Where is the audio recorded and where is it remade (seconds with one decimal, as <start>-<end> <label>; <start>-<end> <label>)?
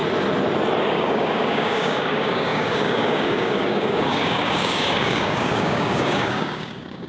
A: 0.0-0.9 recorded; 0.9-7.1 remade